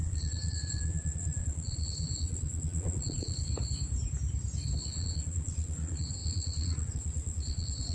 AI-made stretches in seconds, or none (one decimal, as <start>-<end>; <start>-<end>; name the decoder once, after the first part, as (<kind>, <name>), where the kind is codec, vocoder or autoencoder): 0.0-3.5 (vocoder, Vocos); 4.9-7.9